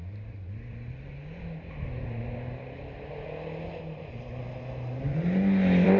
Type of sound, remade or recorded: recorded